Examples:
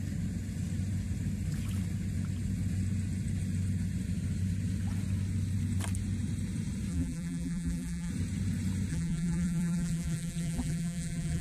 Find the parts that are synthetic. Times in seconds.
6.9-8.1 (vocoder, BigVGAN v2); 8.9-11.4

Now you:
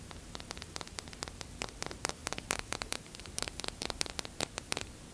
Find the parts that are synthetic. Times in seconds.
2.2-4.1 (vocoder, BigVGAN v2)

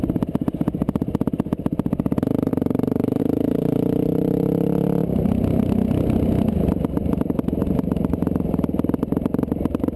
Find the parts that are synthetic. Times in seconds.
none

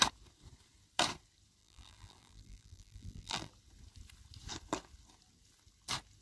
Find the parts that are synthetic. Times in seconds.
1.6-3.5 (vocoder, BigVGAN v2)

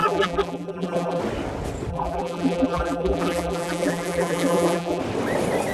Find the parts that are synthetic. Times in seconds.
0.0-1.2 (vocoder, BigVGAN v2); 1.9-5.0

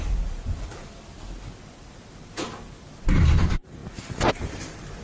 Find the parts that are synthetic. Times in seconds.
0.0-0.7 (vocoder, BigVGAN v2); 3.1-3.8; 4.3-5.0

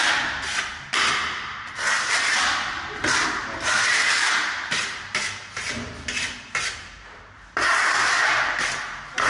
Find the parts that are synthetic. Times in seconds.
0.0-0.7 (vocoder, BigVGAN v2); 1.5-9.3